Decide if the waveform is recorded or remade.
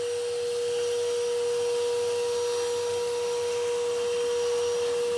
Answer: recorded